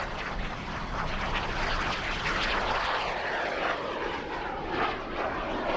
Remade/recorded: recorded